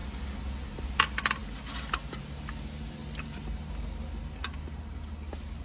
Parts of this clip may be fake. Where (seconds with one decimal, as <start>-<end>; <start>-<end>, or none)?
none